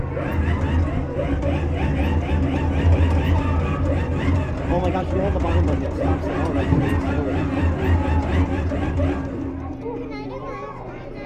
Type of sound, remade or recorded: recorded